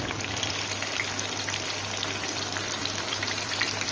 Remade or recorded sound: remade